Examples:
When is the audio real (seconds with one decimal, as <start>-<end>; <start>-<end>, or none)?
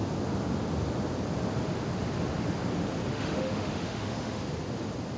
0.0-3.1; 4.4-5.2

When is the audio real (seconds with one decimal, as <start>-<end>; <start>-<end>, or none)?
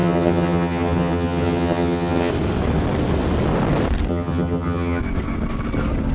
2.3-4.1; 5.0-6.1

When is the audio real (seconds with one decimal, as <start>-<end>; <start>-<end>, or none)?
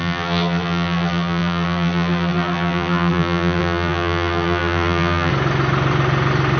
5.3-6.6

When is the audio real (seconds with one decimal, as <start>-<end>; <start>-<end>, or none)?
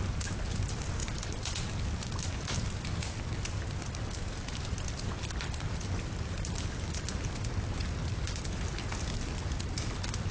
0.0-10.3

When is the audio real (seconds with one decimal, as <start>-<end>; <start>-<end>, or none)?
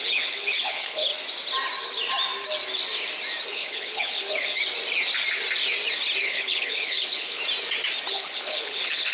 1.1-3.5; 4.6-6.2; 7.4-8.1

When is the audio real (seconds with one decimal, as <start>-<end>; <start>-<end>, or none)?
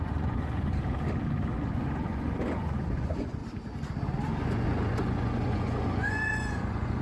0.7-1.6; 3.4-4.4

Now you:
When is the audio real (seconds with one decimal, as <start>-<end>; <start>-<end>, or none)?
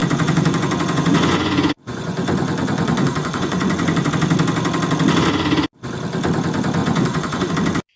4.1-6.8; 7.5-8.0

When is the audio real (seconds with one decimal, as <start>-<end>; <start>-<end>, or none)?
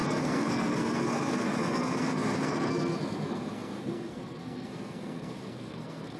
none